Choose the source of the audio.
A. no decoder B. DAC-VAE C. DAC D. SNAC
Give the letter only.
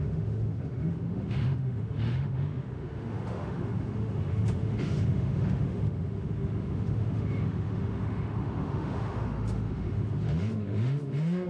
B